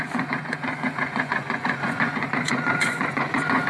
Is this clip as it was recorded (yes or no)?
no